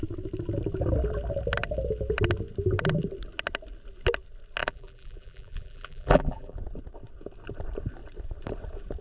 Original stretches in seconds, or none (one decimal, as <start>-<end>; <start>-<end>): 0.0-4.6; 6.6-9.0